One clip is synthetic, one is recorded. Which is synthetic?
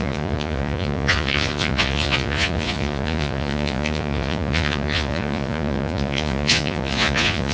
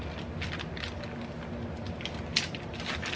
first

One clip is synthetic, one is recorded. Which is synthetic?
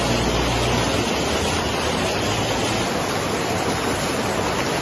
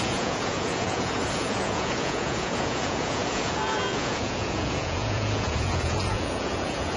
second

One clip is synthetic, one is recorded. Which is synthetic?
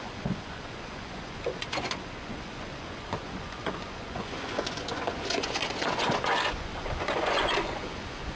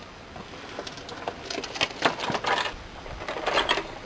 first